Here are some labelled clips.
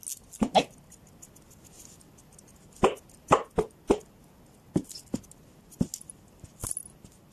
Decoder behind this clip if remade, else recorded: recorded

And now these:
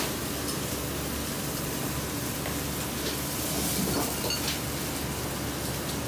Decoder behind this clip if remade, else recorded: recorded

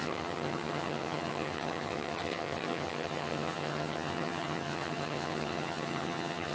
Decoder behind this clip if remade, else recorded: remade, vocoder, HiFi-GAN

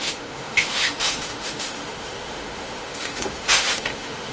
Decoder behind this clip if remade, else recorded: remade, autoencoder, DAC-VAE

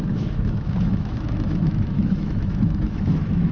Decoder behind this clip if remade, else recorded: remade, autoencoder, DAC-VAE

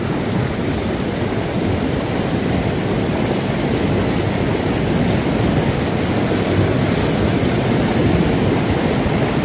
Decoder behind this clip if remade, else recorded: recorded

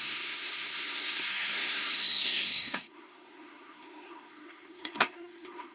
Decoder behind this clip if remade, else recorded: remade, codec, SNAC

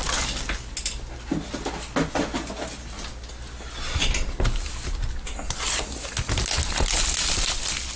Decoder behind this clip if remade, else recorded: recorded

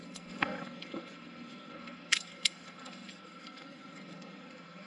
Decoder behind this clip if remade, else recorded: remade, codec, SNAC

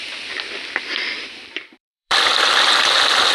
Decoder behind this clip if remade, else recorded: remade, vocoder, BigVGAN v2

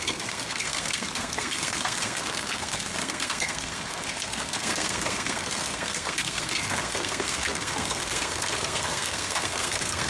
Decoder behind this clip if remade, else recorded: remade, codec, SNAC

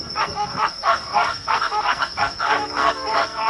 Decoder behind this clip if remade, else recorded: remade, codec, SNAC